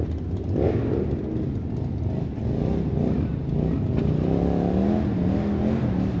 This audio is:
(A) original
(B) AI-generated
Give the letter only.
A